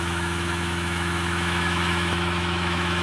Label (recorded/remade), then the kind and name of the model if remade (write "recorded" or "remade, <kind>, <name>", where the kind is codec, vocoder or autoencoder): remade, autoencoder, DAC-VAE